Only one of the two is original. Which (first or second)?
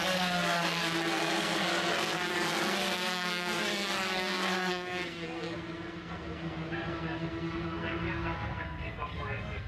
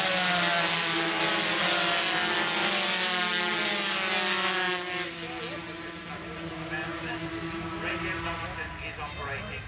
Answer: second